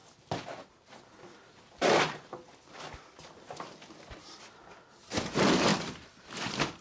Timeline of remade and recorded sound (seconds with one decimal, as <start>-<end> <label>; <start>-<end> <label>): 0.0-5.7 recorded; 5.7-6.8 remade